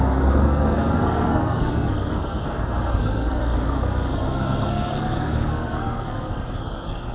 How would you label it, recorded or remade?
remade